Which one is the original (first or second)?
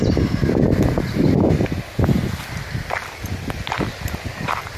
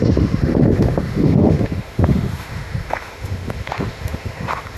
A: first